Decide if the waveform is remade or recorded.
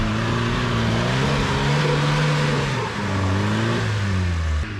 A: recorded